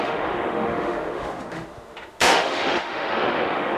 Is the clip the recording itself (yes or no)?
no